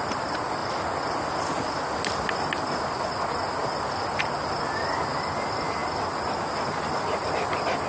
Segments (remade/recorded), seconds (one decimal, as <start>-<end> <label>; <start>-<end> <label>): 0.0-7.9 recorded